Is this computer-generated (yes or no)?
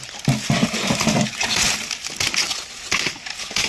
no